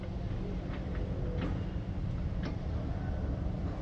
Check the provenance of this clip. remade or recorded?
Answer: recorded